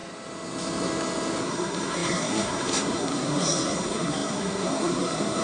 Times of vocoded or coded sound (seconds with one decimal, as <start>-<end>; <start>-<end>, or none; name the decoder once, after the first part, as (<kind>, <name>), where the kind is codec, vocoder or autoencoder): 1.4-5.4 (codec, SNAC)